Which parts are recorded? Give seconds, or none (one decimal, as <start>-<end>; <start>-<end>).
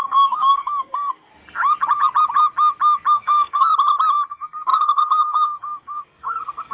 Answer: 1.3-3.1; 3.7-4.3